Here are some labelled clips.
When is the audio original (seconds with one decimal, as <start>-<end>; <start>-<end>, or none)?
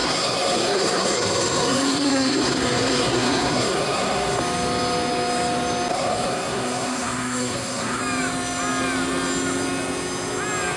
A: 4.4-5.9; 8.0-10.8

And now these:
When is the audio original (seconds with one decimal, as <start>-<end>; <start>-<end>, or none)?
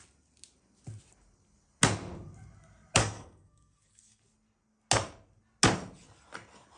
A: 0.0-3.0; 4.2-6.8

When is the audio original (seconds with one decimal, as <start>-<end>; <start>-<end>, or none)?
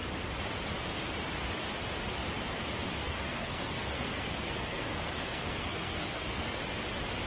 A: 0.0-3.0; 6.6-7.3